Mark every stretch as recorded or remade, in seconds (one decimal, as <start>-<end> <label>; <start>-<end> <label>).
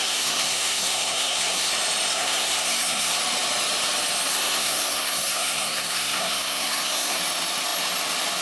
0.0-1.7 remade; 1.7-2.1 recorded; 2.1-3.2 remade; 3.2-4.3 recorded; 4.3-7.2 remade; 7.2-8.4 recorded